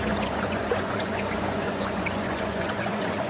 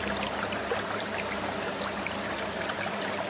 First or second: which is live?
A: second